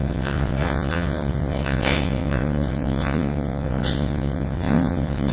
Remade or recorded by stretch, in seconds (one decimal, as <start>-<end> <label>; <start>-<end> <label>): 0.0-5.3 remade